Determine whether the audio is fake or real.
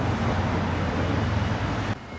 real